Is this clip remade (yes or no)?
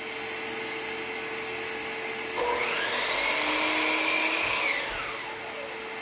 no